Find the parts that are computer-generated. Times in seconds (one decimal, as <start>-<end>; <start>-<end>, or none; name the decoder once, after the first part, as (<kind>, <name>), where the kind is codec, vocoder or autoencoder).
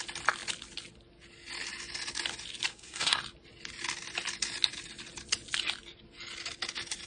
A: 2.7-3.2 (codec, SNAC)